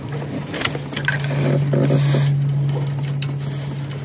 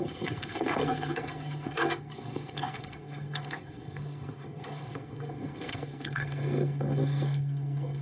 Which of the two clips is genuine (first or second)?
first